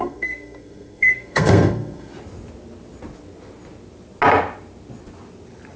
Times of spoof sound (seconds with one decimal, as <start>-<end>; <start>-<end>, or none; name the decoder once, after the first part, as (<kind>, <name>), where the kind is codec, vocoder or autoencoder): 0.0-2.1 (codec, SNAC)